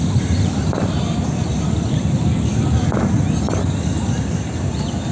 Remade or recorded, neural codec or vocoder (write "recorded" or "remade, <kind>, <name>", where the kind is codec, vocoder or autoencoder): recorded